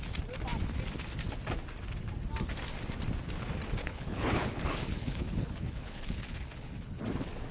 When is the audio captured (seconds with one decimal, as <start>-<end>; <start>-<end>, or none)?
0.0-3.8; 7.0-7.5